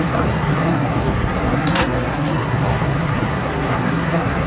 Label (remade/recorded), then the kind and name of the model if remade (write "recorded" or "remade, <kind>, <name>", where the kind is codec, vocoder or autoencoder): remade, codec, SNAC